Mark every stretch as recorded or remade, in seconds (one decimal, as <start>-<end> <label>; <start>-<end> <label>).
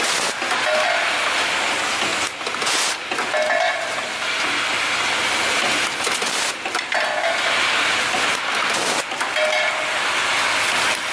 0.0-11.1 recorded